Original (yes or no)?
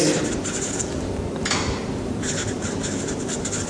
yes